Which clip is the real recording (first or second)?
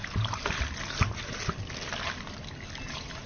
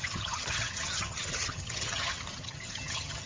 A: first